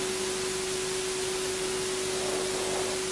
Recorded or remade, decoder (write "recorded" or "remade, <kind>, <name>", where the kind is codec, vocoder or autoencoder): recorded